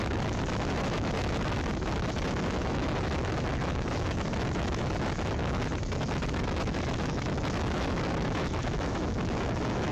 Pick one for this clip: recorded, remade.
remade